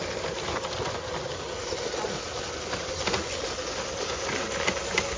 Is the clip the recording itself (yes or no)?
yes